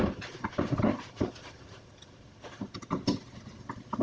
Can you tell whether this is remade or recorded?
recorded